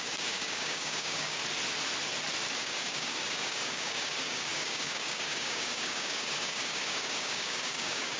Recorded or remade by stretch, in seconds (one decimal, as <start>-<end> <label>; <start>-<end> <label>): 0.0-1.4 remade; 1.4-2.6 recorded; 2.6-8.2 remade